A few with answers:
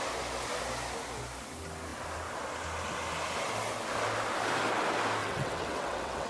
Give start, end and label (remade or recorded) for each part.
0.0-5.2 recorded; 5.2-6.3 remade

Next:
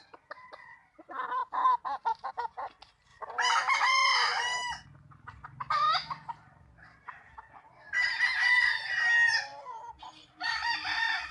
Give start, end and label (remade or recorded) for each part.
0.0-1.4 recorded; 1.4-2.3 remade; 2.3-11.3 recorded

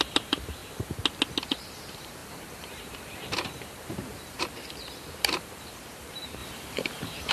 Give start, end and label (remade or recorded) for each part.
0.0-0.6 remade; 0.6-1.5 recorded; 1.5-7.3 remade